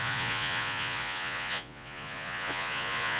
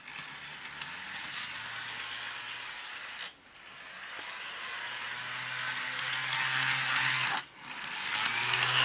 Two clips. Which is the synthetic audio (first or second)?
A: first